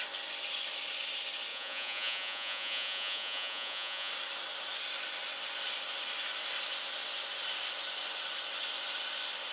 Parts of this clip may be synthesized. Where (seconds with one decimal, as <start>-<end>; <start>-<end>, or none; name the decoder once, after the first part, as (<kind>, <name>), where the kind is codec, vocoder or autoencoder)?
1.5-4.1 (vocoder, Vocos)